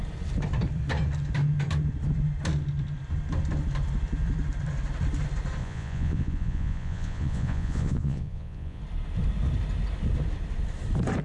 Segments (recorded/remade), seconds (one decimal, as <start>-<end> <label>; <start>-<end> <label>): 0.0-5.6 recorded; 5.6-8.8 remade; 8.8-11.2 recorded